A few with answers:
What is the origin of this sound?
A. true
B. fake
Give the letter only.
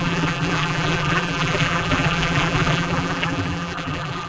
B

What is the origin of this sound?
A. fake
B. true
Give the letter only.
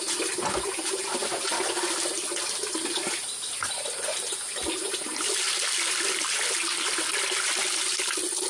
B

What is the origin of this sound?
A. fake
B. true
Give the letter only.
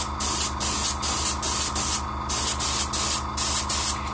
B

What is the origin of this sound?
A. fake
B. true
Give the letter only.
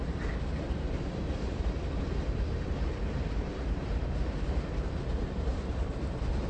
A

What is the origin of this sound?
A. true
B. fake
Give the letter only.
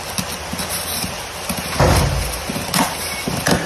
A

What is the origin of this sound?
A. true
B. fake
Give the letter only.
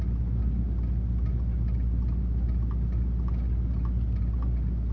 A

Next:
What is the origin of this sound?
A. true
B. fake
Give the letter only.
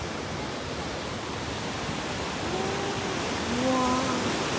A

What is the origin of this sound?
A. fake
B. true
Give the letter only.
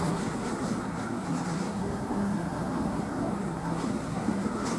A